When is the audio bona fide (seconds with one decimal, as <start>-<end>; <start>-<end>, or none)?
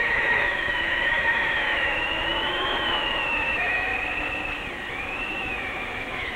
3.9-4.9